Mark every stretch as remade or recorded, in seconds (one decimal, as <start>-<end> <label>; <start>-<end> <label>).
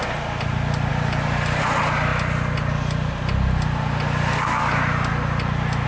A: 0.0-5.9 recorded